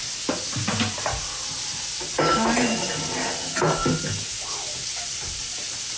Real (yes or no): yes